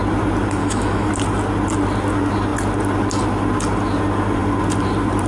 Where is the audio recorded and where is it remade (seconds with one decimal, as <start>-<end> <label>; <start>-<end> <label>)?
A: 0.0-0.6 recorded; 0.6-1.1 remade; 1.1-5.3 recorded